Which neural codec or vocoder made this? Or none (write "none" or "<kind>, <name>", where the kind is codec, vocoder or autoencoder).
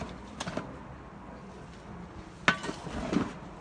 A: none